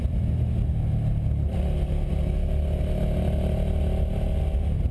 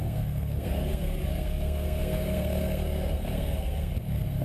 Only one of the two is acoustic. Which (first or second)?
first